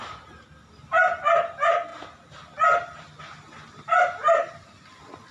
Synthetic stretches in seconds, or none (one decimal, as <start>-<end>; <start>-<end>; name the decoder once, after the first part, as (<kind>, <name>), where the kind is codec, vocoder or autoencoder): none